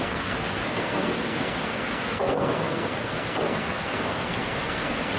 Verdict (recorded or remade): remade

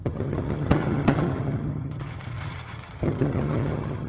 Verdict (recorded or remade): remade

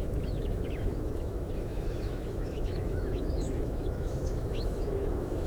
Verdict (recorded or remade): remade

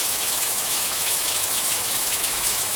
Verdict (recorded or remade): remade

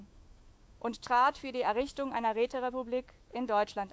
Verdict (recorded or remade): remade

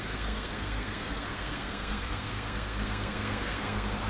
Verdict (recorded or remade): remade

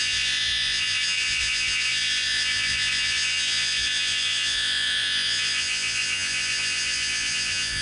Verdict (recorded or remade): remade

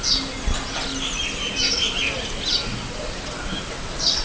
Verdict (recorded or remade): recorded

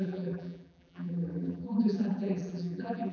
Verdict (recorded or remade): remade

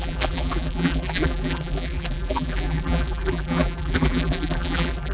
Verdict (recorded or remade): remade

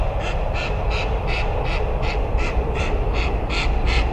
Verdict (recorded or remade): recorded